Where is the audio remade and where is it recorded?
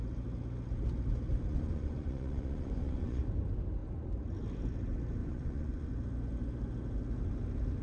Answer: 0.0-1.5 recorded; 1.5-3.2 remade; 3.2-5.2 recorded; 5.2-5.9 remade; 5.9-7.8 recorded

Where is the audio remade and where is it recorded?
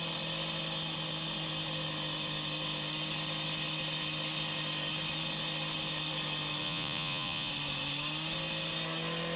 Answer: 0.0-6.6 recorded; 6.6-7.5 remade; 7.5-9.4 recorded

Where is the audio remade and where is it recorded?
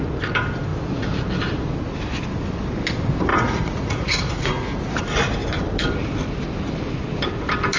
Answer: 0.0-3.3 recorded; 3.3-5.0 remade; 5.0-7.8 recorded